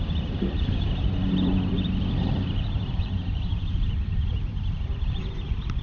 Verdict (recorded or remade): remade